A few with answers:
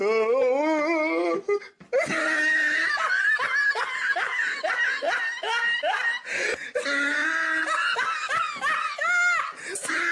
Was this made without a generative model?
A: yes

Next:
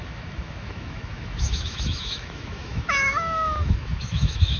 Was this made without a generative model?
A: no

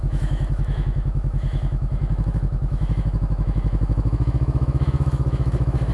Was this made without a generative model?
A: no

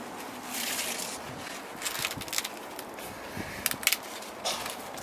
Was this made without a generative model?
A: yes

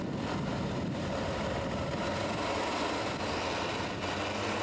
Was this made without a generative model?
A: yes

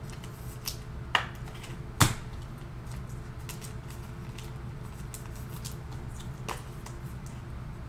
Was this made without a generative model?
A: yes